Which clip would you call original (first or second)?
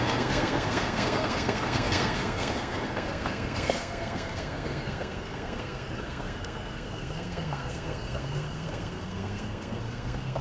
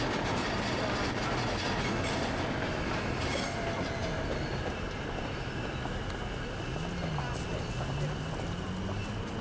second